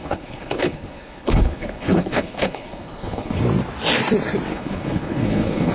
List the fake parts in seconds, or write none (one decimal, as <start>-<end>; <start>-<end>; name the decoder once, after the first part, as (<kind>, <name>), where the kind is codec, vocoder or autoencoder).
0.0-3.4 (codec, HILCodec); 4.5-5.7